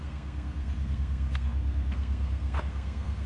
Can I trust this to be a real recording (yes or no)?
no